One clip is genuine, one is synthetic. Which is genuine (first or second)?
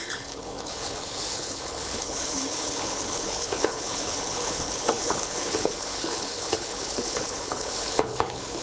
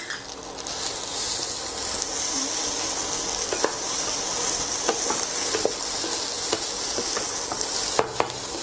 second